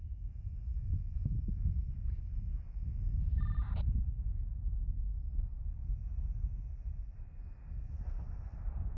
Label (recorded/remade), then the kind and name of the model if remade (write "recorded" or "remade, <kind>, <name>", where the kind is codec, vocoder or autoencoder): recorded